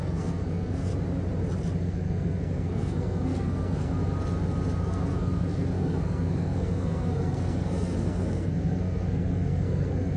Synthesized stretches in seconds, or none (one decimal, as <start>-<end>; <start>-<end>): 0.0-0.9; 1.8-4.0; 4.8-10.2